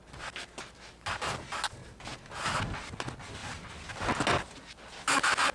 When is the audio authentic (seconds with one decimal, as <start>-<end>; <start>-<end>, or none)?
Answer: 0.0-5.5